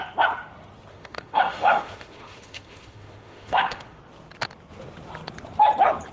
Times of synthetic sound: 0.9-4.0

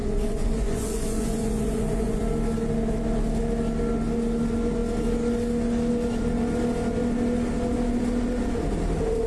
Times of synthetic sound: 0.0-2.2

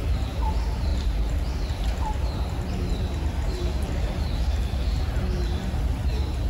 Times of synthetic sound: none

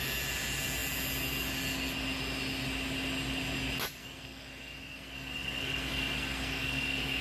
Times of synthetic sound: 4.0-7.2

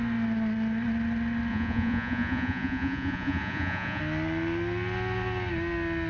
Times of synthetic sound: 1.5-4.0

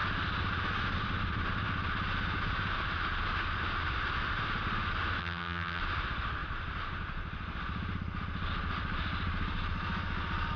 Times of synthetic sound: 5.2-5.8